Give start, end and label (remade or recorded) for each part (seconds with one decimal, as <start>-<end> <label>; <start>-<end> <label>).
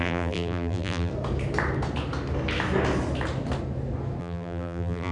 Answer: 0.0-1.1 remade; 1.1-4.2 recorded; 4.2-5.1 remade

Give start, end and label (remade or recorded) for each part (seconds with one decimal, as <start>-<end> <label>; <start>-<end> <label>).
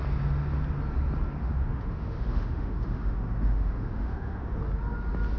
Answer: 0.0-1.4 recorded; 1.4-4.6 remade; 4.6-5.4 recorded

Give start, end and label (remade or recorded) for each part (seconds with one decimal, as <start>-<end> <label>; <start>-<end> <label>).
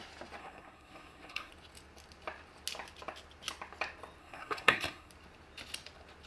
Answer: 0.0-0.4 recorded; 0.4-1.5 remade; 1.5-4.2 recorded; 4.2-5.1 remade; 5.1-6.3 recorded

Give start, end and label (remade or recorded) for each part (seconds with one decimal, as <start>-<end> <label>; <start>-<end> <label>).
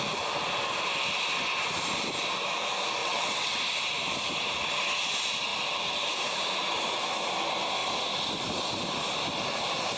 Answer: 0.0-3.0 recorded; 3.0-3.6 remade; 3.6-10.0 recorded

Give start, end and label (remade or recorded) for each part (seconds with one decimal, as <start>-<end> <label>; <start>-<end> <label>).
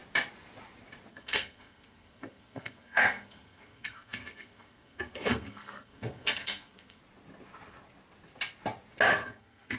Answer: 0.0-1.1 recorded; 1.1-7.0 remade; 7.0-9.1 recorded; 9.1-9.8 remade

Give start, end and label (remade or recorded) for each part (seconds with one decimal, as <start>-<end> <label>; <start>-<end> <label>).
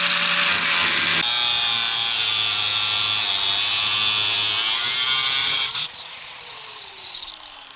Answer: 0.0-5.4 recorded; 5.4-7.3 remade; 7.3-7.8 recorded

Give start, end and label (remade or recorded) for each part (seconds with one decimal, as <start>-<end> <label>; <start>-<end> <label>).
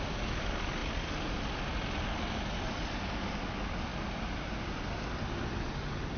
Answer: 0.0-6.2 recorded